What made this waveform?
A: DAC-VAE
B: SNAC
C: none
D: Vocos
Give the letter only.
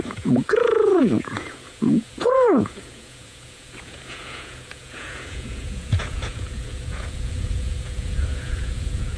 D